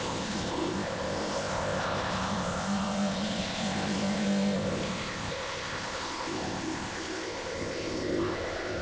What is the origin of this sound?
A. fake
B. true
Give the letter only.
A